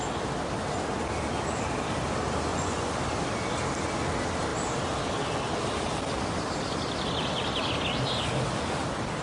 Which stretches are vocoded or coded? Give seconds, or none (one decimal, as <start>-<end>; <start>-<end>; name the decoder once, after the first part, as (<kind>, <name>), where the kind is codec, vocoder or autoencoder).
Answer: 2.5-3.0 (vocoder, Vocos)

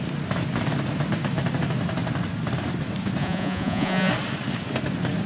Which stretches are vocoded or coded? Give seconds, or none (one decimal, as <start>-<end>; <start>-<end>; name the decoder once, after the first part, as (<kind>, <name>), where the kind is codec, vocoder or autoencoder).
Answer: 3.2-4.1 (vocoder, Vocos)

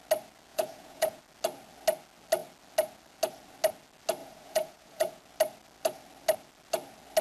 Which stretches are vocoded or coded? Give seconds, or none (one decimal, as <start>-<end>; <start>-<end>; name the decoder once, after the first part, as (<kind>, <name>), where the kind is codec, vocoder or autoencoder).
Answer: 0.5-1.2 (vocoder, Vocos); 4.2-5.2